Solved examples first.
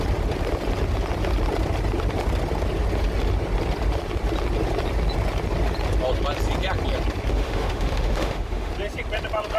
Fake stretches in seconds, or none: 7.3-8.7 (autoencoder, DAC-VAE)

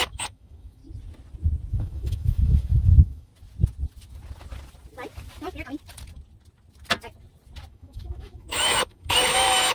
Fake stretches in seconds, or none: 0.0-0.8 (autoencoder, DAC-VAE); 1.7-3.3; 7.7-9.7

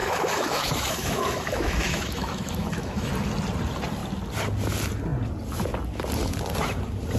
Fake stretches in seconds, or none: 0.0-3.1 (autoencoder, DAC-VAE)